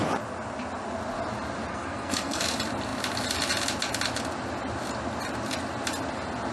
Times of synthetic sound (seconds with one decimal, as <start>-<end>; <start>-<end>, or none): 1.7-2.4